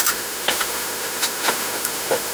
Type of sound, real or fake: fake